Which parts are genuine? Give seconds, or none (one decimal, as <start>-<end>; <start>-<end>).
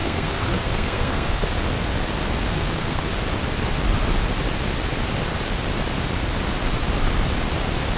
1.5-2.5; 3.1-8.0